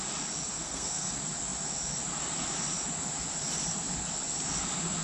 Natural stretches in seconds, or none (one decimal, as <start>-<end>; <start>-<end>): 0.0-0.5; 1.1-5.0